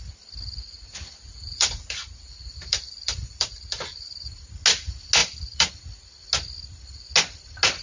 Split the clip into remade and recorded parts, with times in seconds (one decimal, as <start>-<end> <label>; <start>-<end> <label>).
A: 0.0-1.3 recorded; 1.3-4.5 remade; 4.5-5.2 recorded; 5.2-5.7 remade; 5.7-7.8 recorded